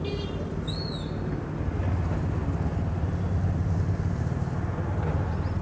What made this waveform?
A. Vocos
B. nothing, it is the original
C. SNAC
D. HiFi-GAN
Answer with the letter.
B